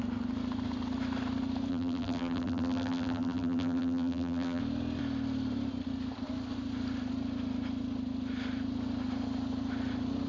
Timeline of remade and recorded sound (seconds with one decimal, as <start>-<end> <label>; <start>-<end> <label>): 0.0-1.7 recorded; 1.7-4.6 remade; 4.6-10.3 recorded